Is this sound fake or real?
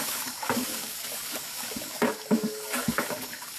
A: fake